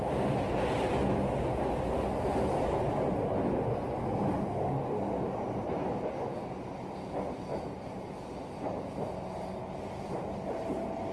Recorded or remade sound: recorded